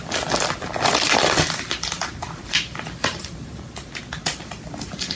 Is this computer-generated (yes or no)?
no